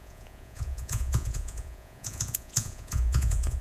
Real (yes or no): no